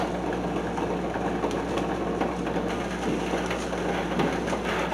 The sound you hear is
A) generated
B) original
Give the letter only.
B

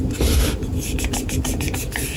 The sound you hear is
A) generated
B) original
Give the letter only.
B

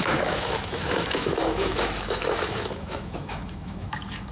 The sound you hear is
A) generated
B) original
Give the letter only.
A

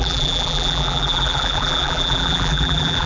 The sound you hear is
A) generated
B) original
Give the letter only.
A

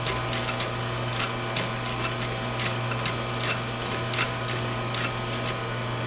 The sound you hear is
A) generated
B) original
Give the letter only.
B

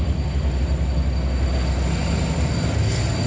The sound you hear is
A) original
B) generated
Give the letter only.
A